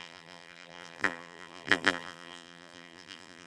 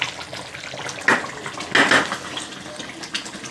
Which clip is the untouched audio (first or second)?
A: second